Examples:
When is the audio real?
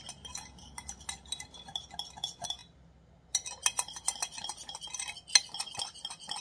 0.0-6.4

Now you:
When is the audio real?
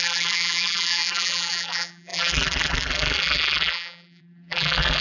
none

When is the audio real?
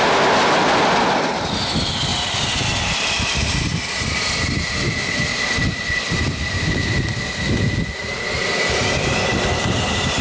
0.0-2.1; 6.9-10.2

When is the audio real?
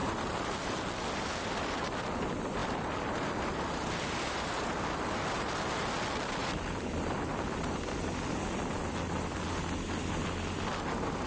0.8-2.6; 4.8-6.4; 8.3-11.3